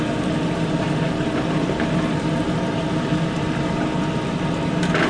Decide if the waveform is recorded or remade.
recorded